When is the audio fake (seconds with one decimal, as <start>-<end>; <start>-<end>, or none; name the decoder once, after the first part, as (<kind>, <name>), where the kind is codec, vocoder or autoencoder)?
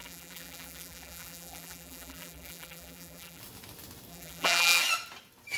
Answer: 0.0-3.4 (vocoder, BigVGAN v2); 4.1-4.8